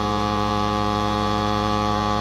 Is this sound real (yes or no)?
no